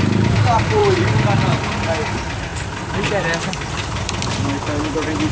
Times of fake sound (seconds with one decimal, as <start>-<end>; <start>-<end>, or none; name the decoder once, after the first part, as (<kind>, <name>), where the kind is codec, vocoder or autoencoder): none